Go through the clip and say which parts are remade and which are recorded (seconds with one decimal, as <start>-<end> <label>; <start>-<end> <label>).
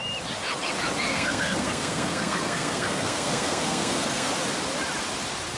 0.0-1.1 recorded; 1.1-4.3 remade; 4.3-5.6 recorded